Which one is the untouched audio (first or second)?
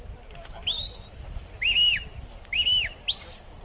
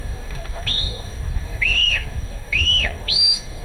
first